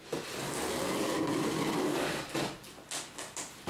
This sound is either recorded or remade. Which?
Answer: recorded